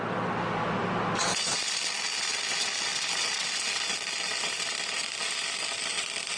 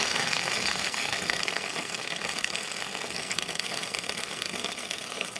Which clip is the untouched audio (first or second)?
first